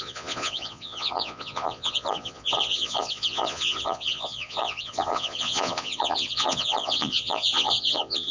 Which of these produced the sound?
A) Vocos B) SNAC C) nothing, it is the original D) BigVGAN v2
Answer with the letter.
A